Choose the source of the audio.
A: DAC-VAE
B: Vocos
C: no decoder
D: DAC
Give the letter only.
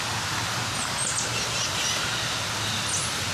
C